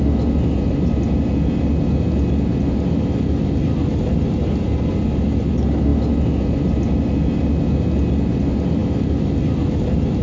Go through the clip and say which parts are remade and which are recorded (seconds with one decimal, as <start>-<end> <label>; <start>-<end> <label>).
0.0-10.2 recorded